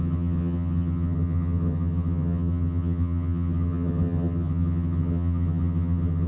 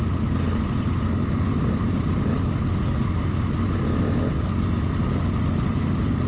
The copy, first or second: first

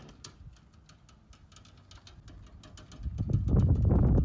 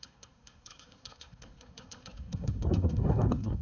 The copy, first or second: second